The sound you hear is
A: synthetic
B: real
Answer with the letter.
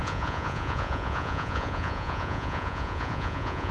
A